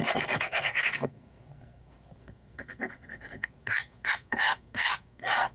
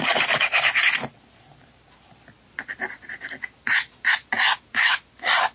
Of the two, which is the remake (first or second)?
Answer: first